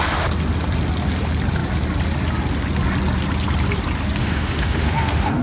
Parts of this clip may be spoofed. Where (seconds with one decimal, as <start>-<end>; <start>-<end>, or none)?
4.2-5.4